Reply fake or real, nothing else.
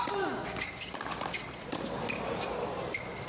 real